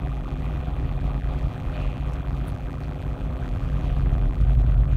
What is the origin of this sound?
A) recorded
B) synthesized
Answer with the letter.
B